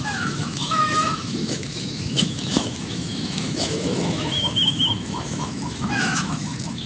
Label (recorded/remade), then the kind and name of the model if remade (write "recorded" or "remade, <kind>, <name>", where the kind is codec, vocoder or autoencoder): remade, autoencoder, DAC-VAE